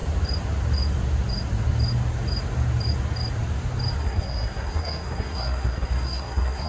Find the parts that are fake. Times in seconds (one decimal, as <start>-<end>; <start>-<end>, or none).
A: 4.0-6.7